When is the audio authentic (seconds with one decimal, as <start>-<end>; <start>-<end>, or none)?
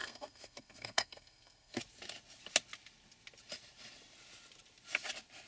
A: 1.8-5.5